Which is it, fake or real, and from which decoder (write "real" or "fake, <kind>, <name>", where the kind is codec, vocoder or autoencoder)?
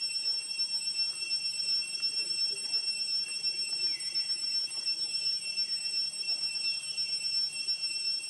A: real